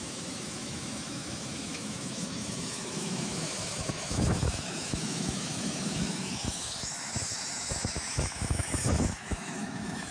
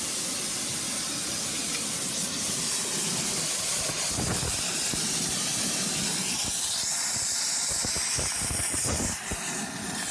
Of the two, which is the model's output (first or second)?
first